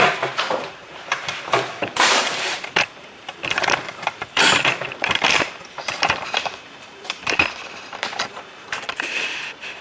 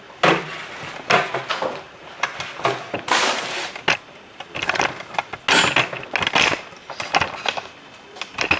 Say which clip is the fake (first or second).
first